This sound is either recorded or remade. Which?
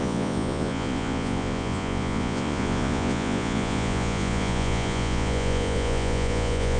remade